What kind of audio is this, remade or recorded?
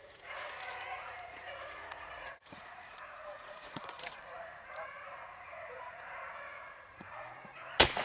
remade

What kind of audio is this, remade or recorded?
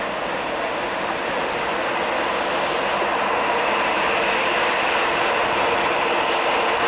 recorded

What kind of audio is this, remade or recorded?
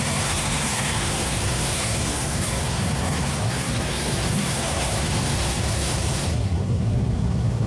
remade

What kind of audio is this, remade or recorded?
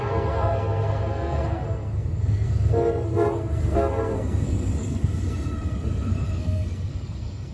remade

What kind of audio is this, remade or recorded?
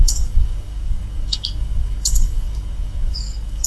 remade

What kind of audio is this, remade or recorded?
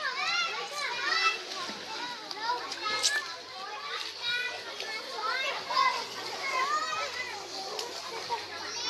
recorded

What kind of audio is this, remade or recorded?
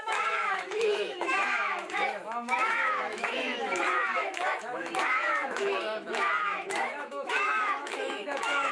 remade